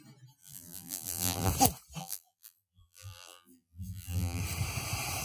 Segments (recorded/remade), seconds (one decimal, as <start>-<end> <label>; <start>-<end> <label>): 0.0-0.4 recorded; 0.4-1.5 remade; 1.5-2.0 recorded; 2.0-4.4 remade; 4.4-5.2 recorded